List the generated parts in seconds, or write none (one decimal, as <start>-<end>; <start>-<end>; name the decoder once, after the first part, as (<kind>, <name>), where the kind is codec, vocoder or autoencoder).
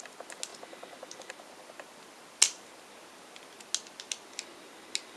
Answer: none